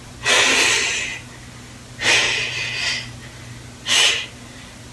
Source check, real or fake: real